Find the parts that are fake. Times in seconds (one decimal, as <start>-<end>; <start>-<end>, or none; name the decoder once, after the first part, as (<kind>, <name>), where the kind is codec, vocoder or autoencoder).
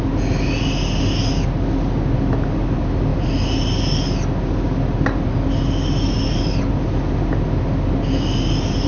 none